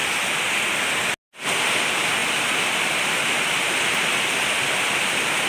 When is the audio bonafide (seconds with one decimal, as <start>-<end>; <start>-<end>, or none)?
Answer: 0.0-5.5